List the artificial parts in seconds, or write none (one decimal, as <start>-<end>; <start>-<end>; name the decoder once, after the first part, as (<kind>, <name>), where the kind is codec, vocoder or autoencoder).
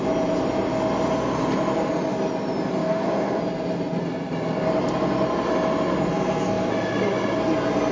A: 2.8-3.4 (codec, SNAC); 6.1-6.7